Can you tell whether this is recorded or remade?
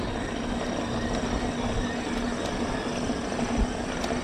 recorded